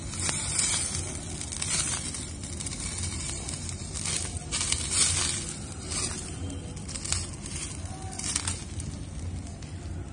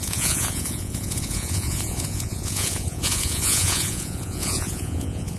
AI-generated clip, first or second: second